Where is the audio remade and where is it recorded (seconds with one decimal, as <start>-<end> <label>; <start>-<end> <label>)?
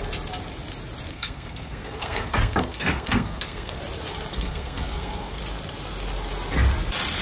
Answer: 0.0-1.1 recorded; 1.1-3.8 remade; 3.8-4.3 recorded; 4.3-5.4 remade; 5.4-7.2 recorded